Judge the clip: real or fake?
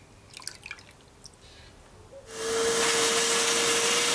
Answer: real